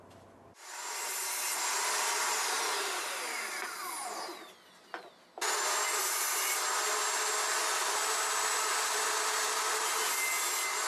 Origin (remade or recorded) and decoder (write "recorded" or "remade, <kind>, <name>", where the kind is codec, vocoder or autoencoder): recorded